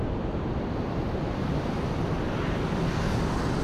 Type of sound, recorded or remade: recorded